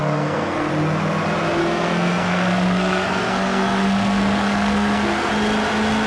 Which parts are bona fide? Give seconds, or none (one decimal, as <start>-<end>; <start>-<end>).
0.7-1.6; 5.3-6.1